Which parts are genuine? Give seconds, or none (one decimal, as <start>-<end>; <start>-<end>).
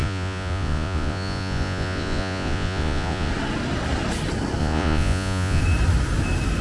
3.3-4.6; 5.6-6.6